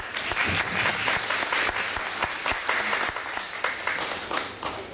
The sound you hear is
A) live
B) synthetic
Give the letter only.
A